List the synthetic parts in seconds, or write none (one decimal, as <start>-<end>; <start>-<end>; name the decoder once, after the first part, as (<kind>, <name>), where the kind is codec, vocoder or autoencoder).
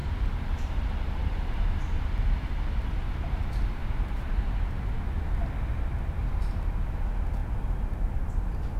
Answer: 0.0-3.3 (vocoder, BigVGAN v2); 3.8-4.7